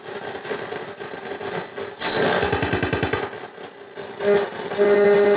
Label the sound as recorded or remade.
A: recorded